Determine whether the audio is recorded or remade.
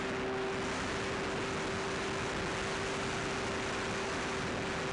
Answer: recorded